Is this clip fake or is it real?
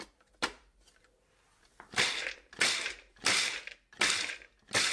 real